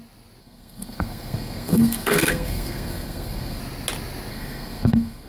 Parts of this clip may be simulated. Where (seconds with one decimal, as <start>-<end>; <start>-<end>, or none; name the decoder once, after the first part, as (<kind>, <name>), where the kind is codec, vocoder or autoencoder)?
0.4-3.6 (codec, SNAC); 4.3-5.3